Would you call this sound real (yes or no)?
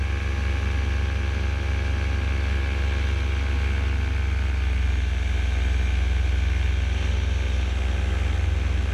yes